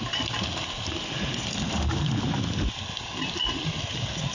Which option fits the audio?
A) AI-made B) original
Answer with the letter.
B